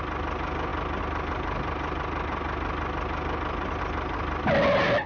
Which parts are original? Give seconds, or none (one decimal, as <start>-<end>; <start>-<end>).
0.0-5.1